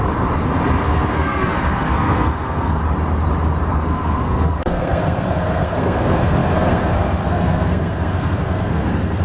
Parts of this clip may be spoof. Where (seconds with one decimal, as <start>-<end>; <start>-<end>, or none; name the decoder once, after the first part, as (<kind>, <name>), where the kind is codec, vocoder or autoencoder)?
0.8-2.8 (codec, SNAC); 3.7-9.2